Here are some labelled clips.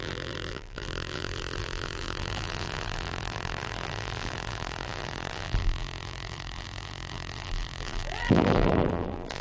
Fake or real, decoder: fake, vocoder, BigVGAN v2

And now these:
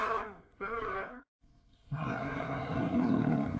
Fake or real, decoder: fake, codec, SNAC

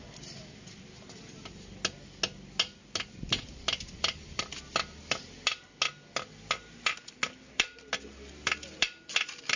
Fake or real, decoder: real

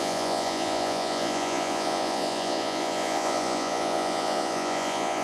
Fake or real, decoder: fake, vocoder, Vocos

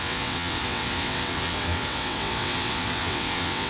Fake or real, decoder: fake, vocoder, WaveNeXt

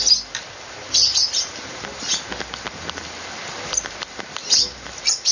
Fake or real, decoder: real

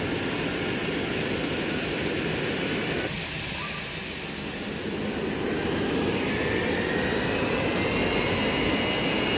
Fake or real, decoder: real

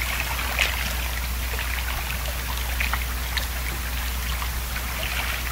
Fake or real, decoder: real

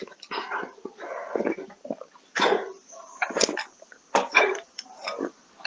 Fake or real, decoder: real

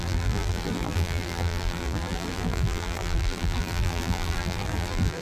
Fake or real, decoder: fake, vocoder, BigVGAN v2